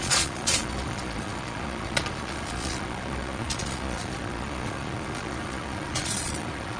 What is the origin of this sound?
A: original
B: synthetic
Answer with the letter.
B